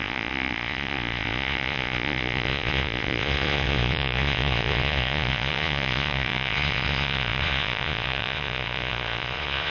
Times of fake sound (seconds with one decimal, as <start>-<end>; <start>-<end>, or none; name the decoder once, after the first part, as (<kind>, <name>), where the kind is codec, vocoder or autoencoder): 0.0-9.7 (vocoder, Vocos)